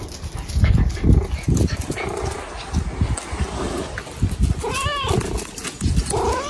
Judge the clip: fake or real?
real